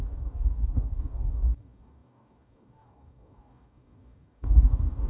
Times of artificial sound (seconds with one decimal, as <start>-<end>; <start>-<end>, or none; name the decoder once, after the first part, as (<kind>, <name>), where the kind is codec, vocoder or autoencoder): 0.0-5.1 (codec, DAC)